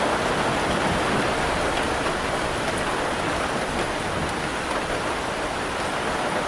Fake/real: real